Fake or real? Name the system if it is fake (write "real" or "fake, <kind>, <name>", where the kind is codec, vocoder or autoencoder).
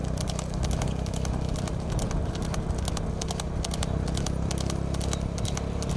real